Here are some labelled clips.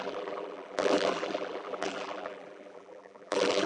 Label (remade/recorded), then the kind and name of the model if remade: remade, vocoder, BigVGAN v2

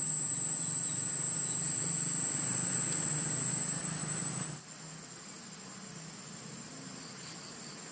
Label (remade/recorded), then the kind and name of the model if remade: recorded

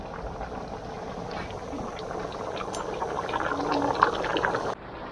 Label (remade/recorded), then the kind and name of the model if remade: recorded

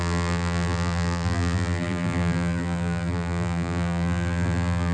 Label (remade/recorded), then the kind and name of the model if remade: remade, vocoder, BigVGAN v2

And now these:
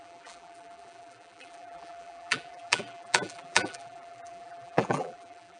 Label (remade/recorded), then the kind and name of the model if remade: remade, vocoder, BigVGAN v2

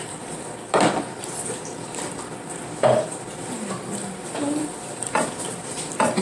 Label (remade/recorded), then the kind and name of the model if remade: remade, vocoder, BigVGAN v2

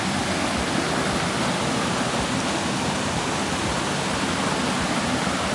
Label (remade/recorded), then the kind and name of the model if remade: recorded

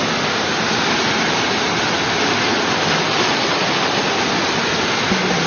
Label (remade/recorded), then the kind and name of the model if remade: recorded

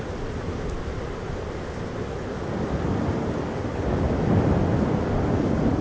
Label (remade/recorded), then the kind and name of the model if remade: recorded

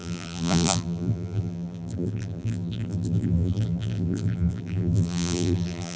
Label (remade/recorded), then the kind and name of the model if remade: remade, vocoder, BigVGAN v2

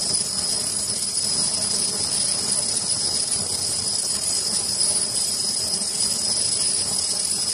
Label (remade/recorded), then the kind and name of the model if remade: recorded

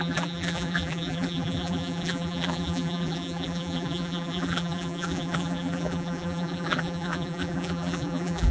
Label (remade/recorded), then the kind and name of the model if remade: remade, vocoder, BigVGAN v2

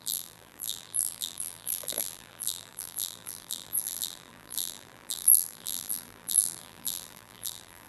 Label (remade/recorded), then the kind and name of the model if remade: remade, vocoder, BigVGAN v2